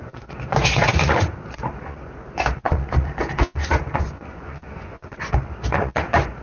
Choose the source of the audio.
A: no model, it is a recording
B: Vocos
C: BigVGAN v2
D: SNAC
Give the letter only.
B